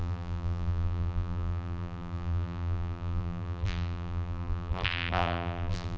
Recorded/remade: remade